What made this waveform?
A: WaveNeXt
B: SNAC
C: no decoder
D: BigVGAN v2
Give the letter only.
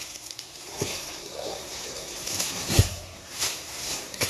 B